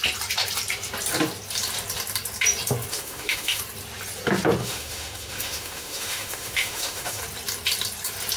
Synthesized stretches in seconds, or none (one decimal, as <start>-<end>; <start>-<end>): 2.9-3.6; 4.6-7.2